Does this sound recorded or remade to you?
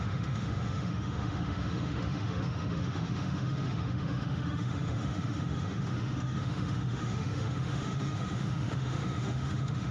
remade